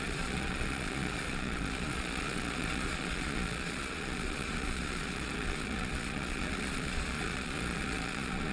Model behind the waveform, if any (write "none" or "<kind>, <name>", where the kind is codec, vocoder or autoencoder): vocoder, Vocos